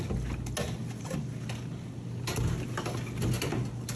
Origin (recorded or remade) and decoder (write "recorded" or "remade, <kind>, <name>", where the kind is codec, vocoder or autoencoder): recorded